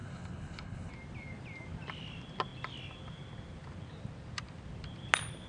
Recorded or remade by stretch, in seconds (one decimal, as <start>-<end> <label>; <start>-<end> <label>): 0.0-0.9 remade; 0.9-5.5 recorded